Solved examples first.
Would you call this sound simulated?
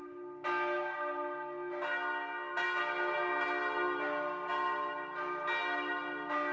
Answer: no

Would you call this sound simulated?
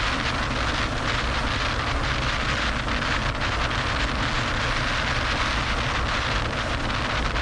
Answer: no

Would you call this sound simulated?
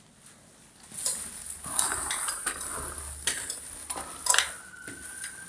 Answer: no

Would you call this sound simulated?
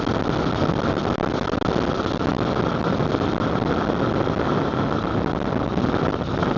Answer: no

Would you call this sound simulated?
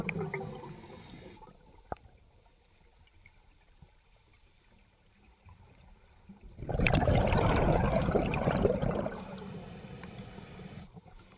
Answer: yes